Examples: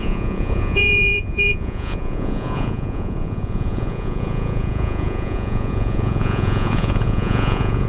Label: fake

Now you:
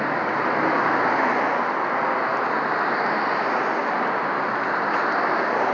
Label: real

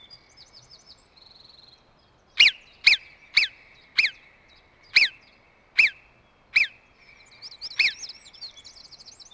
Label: real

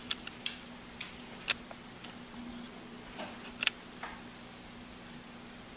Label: real